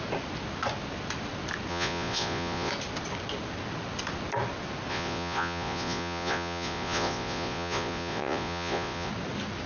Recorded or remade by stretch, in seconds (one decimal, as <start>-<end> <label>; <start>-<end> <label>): 0.0-1.7 recorded; 1.7-2.7 remade; 2.7-4.9 recorded; 4.9-9.1 remade; 9.1-9.7 recorded